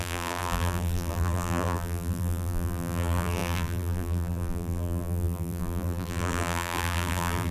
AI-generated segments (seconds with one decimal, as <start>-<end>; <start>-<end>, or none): 0.0-7.5